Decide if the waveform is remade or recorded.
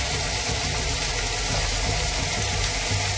recorded